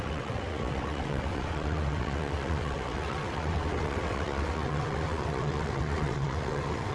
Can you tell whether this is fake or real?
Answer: fake